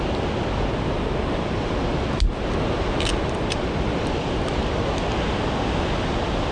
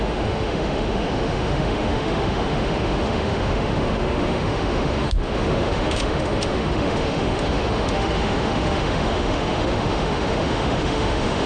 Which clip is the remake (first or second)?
second